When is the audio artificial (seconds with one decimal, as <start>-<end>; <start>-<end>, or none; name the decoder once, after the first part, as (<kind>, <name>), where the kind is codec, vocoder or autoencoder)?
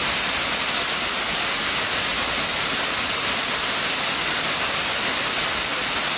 none